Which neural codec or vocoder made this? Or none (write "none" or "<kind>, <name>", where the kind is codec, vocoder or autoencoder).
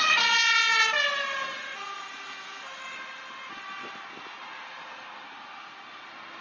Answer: none